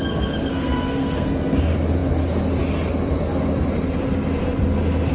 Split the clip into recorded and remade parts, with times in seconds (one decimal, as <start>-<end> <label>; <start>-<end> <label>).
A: 0.0-0.5 recorded; 0.5-1.3 remade; 1.3-5.1 recorded